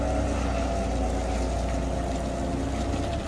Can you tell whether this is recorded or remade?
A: recorded